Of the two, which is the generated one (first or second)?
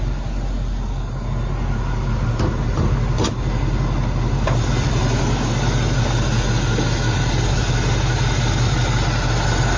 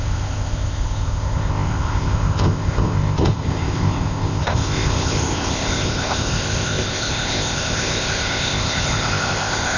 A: second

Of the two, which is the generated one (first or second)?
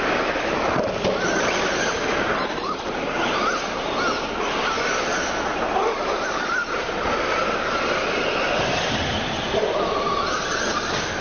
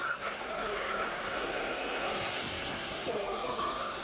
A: second